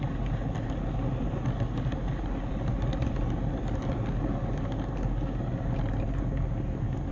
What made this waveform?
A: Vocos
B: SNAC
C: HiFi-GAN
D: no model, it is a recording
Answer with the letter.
D